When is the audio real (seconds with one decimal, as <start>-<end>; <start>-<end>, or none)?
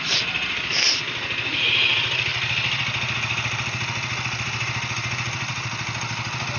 0.0-6.6